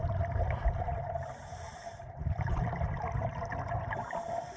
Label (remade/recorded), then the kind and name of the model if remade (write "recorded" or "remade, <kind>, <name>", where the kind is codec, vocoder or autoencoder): remade, vocoder, BigVGAN v2